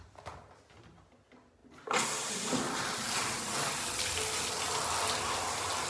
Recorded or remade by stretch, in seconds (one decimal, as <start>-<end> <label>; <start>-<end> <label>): 0.0-5.9 recorded

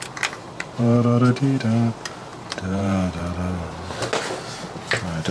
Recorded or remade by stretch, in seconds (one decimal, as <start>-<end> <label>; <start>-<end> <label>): 0.0-0.4 recorded; 0.4-1.6 remade; 1.6-2.3 recorded; 2.3-3.2 remade; 3.2-5.3 recorded

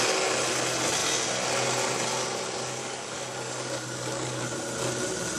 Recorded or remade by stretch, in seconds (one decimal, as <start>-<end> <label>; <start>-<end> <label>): 0.0-2.8 recorded; 2.8-4.4 remade; 4.4-5.4 recorded

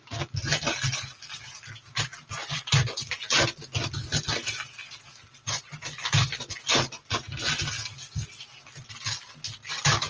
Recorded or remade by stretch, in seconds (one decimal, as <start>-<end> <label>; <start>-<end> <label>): 0.0-10.1 recorded

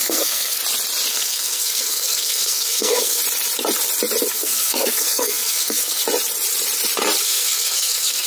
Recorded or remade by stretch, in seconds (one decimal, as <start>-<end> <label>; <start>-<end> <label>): 0.0-0.6 remade; 0.6-1.1 recorded; 1.1-3.2 remade; 3.2-4.3 recorded; 4.3-6.0 remade; 6.0-7.2 recorded; 7.2-8.3 remade